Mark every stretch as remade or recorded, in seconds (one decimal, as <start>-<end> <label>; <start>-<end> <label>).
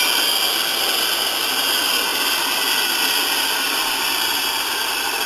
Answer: 0.0-5.3 recorded